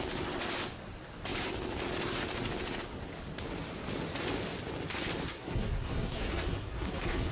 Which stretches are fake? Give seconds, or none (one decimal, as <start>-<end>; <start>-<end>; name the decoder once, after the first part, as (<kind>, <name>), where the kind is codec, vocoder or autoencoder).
5.3-7.3 (codec, SNAC)